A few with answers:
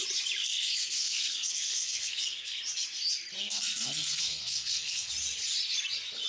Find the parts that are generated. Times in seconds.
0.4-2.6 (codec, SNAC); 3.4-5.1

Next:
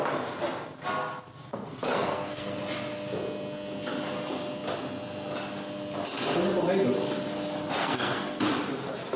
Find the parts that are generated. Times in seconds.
1.5-2.6 (codec, SNAC); 7.8-8.4

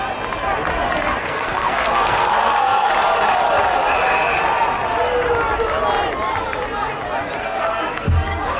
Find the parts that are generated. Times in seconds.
1.2-2.9 (codec, SNAC); 7.4-8.6

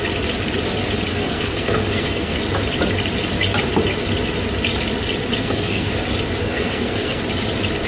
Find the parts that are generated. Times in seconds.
1.1-2.4 (codec, SNAC); 5.4-5.9; 6.4-7.2